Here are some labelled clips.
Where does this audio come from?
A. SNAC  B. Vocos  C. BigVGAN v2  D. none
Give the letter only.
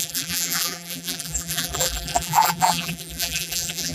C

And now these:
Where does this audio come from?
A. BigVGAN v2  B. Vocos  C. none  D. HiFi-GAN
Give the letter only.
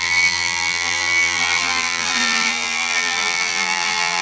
A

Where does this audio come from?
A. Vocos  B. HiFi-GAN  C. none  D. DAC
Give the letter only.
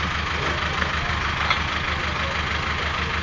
C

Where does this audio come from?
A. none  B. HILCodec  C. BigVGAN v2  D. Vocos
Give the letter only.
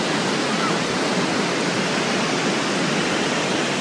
A